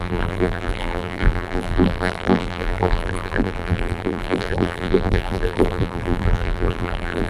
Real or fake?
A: fake